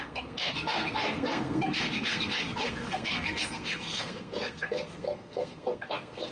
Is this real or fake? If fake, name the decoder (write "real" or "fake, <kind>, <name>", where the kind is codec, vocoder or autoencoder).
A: fake, codec, SNAC